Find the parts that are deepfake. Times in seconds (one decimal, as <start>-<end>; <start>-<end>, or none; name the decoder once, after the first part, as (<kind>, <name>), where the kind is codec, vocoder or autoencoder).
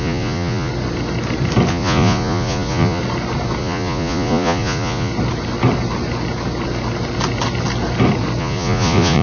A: 0.0-0.7 (vocoder, Vocos); 1.7-3.0; 3.6-5.1; 8.4-9.2